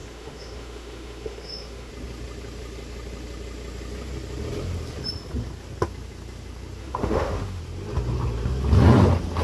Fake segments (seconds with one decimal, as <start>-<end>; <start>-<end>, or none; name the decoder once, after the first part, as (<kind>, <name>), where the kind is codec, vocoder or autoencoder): 0.0-1.9 (autoencoder, DAC-VAE); 6.8-7.6